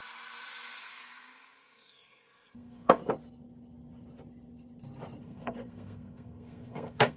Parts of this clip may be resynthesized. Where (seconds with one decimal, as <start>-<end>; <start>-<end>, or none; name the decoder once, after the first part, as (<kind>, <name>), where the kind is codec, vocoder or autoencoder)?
0.8-3.0 (codec, SNAC); 5.2-7.2